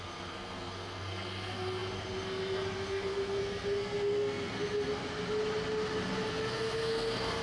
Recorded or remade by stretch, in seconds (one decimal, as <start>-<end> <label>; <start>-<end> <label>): 0.0-5.0 remade; 5.0-6.3 recorded; 6.3-7.4 remade